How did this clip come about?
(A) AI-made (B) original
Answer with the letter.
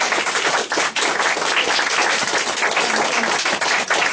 B